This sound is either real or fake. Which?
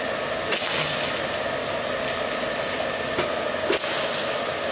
real